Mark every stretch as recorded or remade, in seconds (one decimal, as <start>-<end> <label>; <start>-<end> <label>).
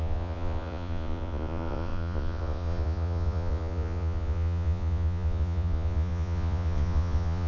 0.0-7.5 remade